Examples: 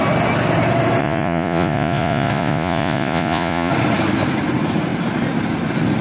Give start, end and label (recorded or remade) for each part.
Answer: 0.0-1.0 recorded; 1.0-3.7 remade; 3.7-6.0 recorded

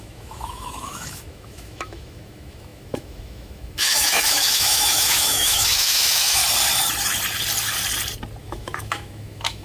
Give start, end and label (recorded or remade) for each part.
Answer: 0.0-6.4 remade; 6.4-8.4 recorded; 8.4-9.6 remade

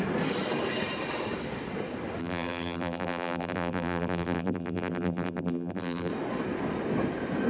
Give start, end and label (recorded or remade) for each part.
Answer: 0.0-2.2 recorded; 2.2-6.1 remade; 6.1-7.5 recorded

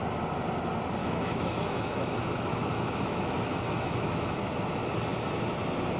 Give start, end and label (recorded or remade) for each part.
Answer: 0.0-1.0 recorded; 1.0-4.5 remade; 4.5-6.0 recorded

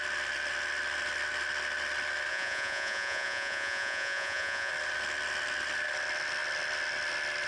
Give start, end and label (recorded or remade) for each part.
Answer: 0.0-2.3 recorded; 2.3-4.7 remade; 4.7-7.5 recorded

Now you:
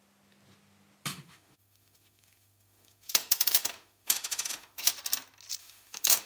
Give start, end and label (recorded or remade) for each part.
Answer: 0.0-1.1 recorded; 1.1-4.9 remade; 4.9-5.6 recorded; 5.6-6.3 remade

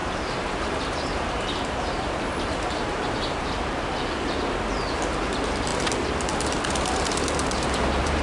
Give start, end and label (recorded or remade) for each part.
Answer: 0.0-2.4 remade; 2.4-7.4 recorded; 7.4-8.2 remade

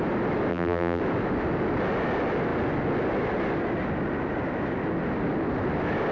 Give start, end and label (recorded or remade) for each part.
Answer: 0.0-0.5 recorded; 0.5-1.0 remade; 1.0-6.1 recorded